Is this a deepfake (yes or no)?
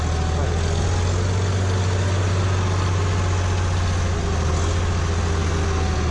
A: no